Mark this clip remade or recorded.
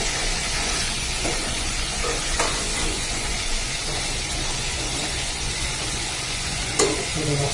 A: remade